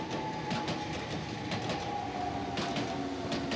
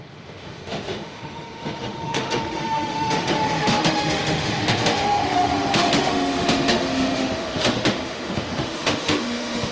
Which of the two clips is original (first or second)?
first